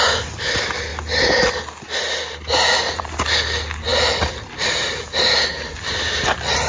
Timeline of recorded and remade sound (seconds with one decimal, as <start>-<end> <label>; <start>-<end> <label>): 0.0-6.7 recorded